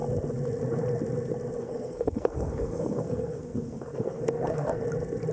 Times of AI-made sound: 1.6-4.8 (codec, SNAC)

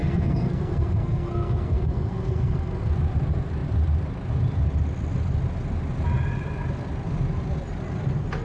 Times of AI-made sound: 0.0-2.9 (codec, SNAC)

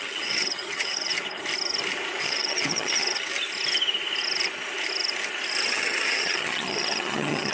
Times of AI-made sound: 0.0-1.1 (vocoder, HiFi-GAN); 2.2-3.3; 5.7-7.5